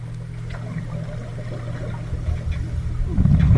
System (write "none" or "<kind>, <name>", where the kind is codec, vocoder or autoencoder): none